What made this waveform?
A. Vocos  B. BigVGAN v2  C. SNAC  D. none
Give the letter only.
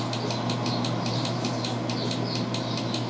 D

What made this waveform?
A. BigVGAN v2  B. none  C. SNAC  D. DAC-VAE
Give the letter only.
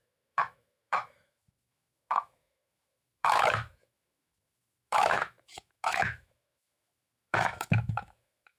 D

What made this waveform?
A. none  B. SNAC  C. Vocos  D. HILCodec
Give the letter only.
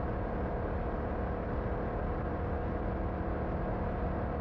A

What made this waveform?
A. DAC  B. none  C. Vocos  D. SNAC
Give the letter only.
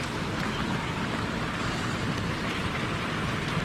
B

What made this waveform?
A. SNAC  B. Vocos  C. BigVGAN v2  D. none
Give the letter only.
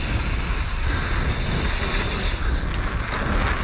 D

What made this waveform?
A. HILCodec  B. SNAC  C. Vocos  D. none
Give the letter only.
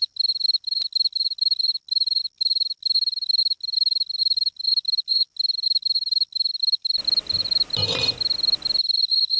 D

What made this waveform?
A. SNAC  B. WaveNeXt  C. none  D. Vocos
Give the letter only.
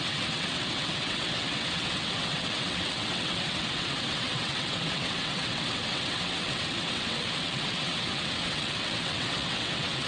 B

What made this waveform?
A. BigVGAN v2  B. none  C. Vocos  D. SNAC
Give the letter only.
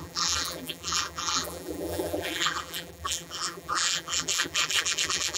A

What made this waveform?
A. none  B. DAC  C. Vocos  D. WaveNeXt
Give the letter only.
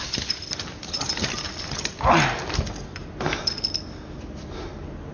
A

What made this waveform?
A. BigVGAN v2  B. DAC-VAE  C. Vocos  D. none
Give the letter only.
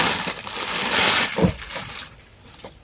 A